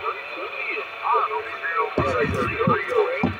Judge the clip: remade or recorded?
recorded